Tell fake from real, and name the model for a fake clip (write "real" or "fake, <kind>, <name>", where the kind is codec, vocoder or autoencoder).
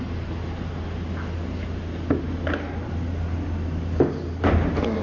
real